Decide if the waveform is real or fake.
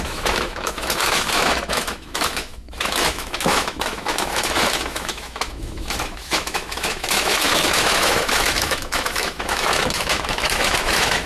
fake